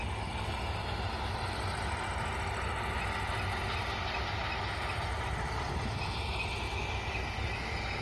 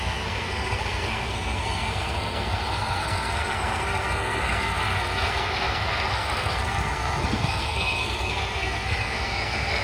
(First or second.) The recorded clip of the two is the first